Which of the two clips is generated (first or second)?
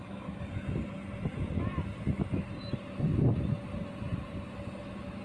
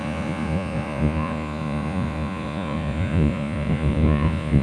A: second